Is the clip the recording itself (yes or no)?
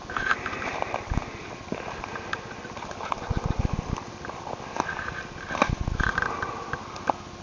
yes